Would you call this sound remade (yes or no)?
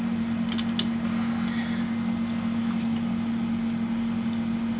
no